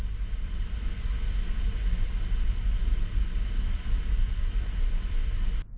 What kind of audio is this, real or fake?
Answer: real